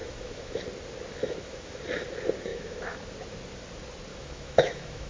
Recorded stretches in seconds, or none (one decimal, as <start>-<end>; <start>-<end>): 0.6-1.2; 1.8-2.5; 3.1-4.1